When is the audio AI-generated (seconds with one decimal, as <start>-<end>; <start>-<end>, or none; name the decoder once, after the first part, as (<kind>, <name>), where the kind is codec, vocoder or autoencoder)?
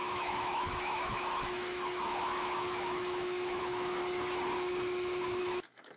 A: 0.0-4.0 (autoencoder, DAC-VAE); 5.4-6.0